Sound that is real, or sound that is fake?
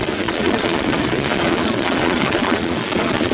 fake